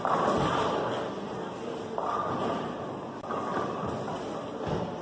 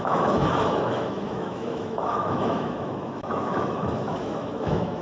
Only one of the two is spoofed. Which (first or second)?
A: second